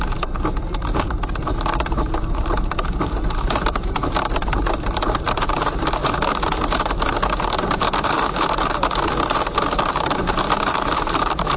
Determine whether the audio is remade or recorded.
remade